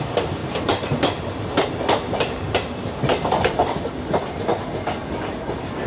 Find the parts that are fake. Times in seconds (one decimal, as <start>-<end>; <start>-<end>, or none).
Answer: none